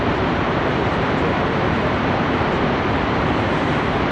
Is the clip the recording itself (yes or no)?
no